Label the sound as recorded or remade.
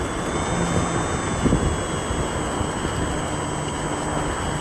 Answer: recorded